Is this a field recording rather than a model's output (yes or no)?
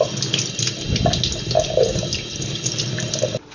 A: yes